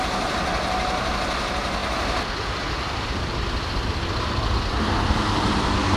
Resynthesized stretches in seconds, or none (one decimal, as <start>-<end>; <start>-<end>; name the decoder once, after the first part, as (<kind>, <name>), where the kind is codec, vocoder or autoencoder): none